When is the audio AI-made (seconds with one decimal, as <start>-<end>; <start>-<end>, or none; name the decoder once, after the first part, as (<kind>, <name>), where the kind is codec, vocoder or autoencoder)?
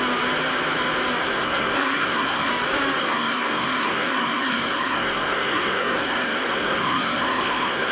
1.2-2.5 (codec, SNAC); 3.0-7.9